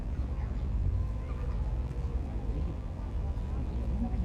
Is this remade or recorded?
remade